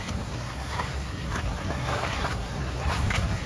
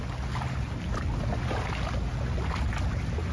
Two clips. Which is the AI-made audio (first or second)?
first